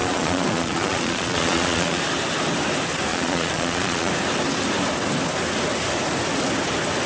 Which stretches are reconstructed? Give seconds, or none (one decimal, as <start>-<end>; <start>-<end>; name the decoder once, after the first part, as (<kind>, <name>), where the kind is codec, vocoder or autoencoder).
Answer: 0.0-2.0 (vocoder, Vocos); 3.1-4.1